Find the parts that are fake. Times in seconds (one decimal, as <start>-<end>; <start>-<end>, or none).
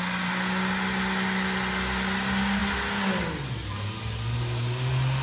none